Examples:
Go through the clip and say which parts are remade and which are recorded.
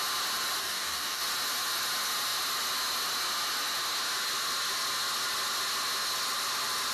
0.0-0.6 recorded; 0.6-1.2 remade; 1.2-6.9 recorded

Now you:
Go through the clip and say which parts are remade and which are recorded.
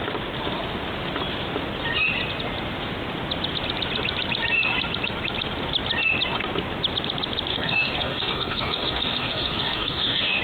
0.0-7.5 recorded; 7.5-10.4 remade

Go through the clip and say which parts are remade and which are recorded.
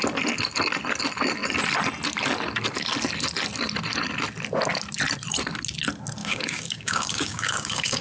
0.0-6.2 recorded; 6.2-8.0 remade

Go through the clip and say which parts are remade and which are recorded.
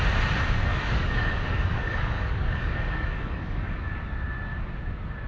0.0-0.7 recorded; 0.7-3.9 remade; 3.9-5.3 recorded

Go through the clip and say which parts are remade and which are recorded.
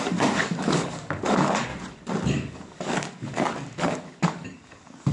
0.0-1.7 remade; 1.7-2.3 recorded; 2.3-5.1 remade